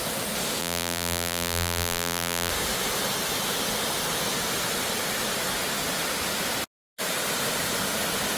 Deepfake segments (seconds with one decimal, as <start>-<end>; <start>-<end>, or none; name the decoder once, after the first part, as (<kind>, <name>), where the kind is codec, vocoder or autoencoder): 0.6-2.5 (vocoder, BigVGAN v2)